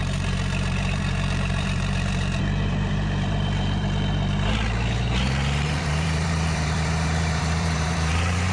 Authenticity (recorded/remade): remade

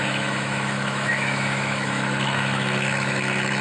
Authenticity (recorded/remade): remade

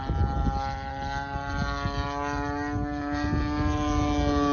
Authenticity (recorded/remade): recorded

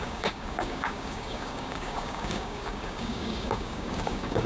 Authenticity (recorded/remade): remade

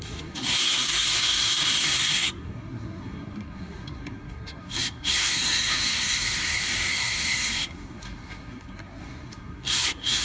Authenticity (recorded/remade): remade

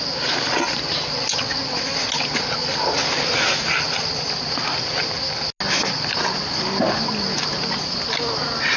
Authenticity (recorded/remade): recorded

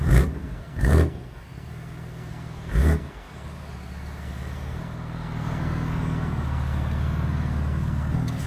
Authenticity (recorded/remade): remade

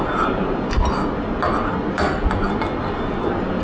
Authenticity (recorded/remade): recorded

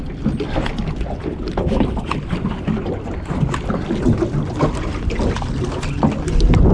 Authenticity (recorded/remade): recorded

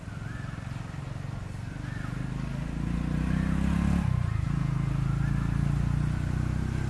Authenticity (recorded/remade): recorded